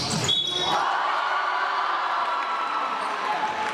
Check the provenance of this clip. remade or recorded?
recorded